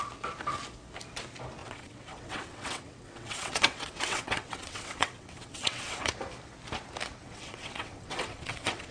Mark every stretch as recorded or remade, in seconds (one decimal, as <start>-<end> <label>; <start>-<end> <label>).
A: 0.0-1.6 recorded; 1.6-6.1 remade; 6.1-7.2 recorded; 7.2-8.9 remade